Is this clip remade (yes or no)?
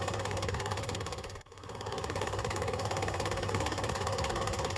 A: yes